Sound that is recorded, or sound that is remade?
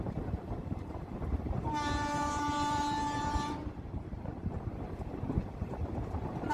remade